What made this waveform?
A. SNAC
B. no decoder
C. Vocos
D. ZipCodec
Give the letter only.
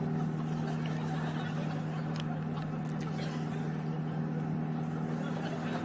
B